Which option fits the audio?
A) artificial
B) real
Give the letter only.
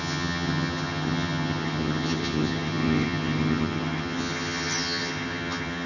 A